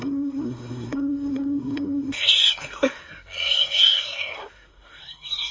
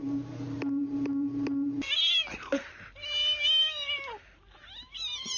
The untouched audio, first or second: second